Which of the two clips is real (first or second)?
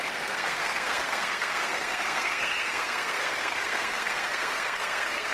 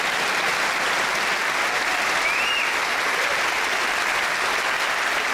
second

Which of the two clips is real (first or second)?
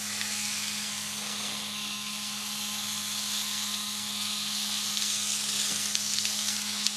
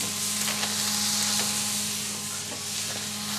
second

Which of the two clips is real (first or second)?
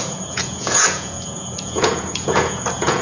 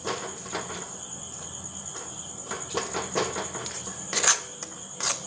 second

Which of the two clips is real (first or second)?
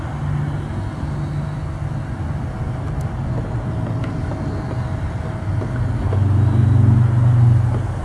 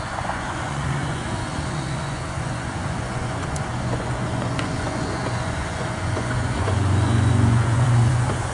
first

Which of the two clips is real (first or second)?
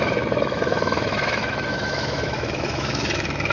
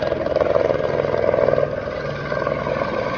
second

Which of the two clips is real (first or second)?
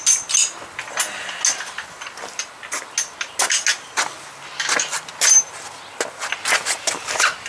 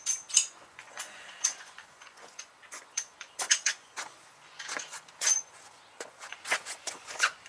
first